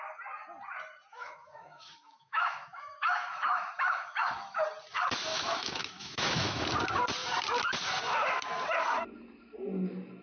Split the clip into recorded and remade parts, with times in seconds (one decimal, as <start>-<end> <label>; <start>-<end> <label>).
0.0-1.1 recorded; 1.1-4.6 remade; 4.6-5.3 recorded; 5.3-6.6 remade; 6.6-10.2 recorded